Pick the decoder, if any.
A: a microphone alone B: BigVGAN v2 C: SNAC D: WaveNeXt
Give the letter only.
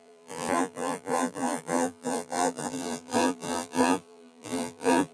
B